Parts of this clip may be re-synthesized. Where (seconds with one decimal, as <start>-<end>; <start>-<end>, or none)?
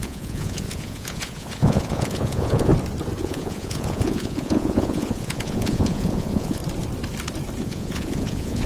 0.0-2.7; 3.2-6.6; 7.6-8.7